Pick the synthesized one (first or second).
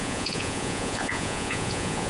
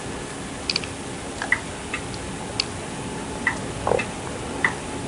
first